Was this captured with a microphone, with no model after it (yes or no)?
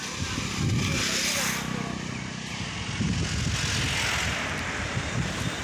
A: yes